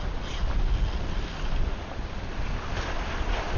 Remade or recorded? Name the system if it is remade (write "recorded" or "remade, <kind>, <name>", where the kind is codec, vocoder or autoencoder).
recorded